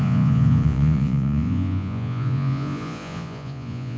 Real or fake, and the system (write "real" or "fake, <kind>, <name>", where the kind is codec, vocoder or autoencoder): fake, vocoder, Vocos